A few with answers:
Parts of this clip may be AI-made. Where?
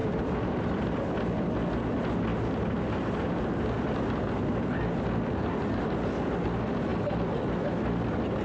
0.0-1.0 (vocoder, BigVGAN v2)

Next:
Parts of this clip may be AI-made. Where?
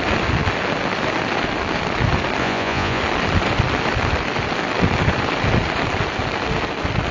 2.4-3.0 (vocoder, Vocos)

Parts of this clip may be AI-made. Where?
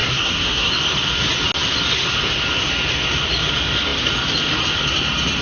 0.0-0.7 (codec, SNAC)